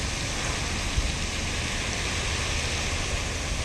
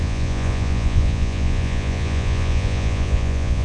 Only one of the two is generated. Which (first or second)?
second